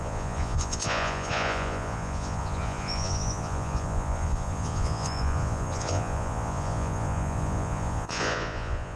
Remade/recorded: remade